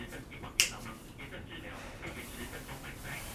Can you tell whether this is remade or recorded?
recorded